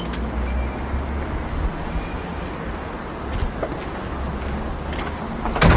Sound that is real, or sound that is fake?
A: real